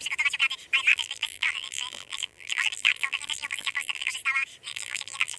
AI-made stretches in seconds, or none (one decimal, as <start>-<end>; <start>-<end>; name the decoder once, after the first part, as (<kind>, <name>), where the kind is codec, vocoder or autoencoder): 0.9-4.1 (vocoder, BigVGAN v2); 4.7-5.4